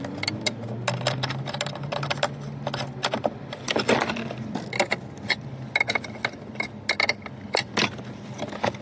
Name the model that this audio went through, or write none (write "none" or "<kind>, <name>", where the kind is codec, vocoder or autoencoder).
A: none